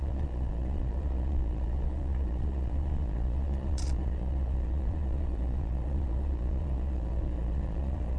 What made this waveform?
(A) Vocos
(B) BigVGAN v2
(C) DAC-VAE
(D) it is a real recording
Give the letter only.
A